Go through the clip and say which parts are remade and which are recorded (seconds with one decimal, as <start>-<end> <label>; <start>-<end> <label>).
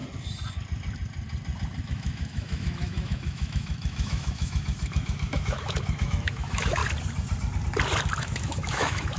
0.0-1.8 recorded; 1.8-6.8 remade; 6.8-8.2 recorded; 8.2-9.2 remade